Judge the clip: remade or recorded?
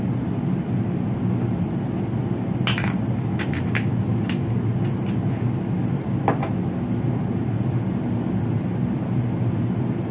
recorded